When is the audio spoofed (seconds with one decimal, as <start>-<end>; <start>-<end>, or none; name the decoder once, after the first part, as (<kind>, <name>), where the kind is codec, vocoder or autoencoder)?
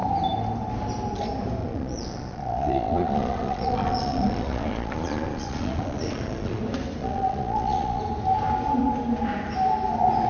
1.6-6.6 (vocoder, Vocos); 7.0-8.0